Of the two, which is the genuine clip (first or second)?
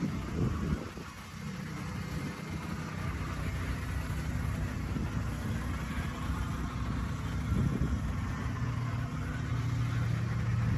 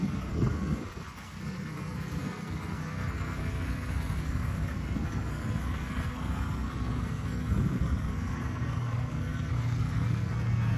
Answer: first